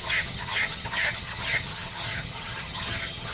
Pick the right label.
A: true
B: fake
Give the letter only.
B